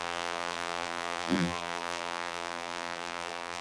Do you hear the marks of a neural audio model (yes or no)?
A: yes